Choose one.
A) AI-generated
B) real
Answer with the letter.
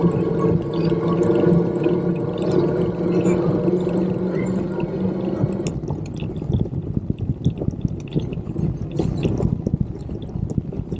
B